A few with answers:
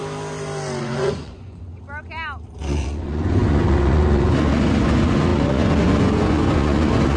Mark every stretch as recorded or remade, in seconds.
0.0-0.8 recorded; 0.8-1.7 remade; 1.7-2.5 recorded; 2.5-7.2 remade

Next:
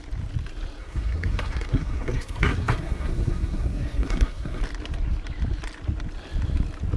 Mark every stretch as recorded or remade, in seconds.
0.0-0.8 recorded; 0.8-4.6 remade; 4.6-7.0 recorded

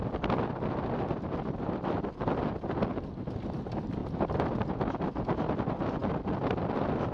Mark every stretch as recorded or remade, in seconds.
0.0-7.1 recorded

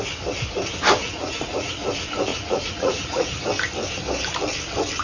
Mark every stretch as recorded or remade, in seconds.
0.0-1.0 recorded; 1.0-1.7 remade; 1.7-2.3 recorded; 2.3-3.4 remade; 3.4-5.0 recorded

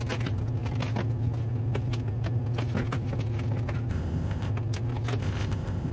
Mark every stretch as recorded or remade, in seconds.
0.0-3.9 recorded; 3.9-4.5 remade; 4.5-5.2 recorded; 5.2-5.9 remade

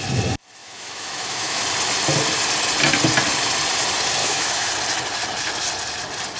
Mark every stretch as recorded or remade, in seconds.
0.0-0.6 recorded; 0.6-1.6 remade; 1.6-4.2 recorded; 4.2-4.7 remade; 4.7-6.4 recorded

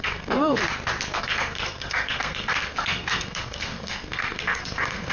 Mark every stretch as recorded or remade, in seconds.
0.0-0.6 remade; 0.6-1.2 recorded; 1.2-5.1 remade